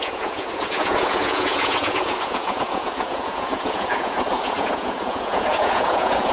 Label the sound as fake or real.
fake